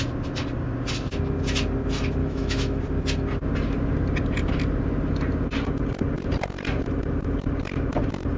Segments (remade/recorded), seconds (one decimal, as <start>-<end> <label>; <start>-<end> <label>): 0.0-2.2 recorded; 2.2-2.8 remade; 2.8-8.4 recorded